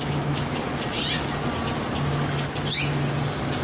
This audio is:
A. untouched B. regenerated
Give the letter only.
A